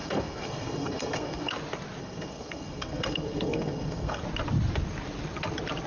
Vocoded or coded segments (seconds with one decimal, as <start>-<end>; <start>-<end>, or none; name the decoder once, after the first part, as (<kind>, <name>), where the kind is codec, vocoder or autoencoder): 0.0-1.5 (codec, SNAC); 2.0-4.2